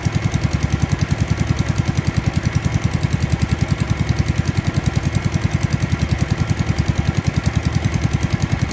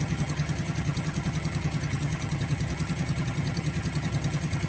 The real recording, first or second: first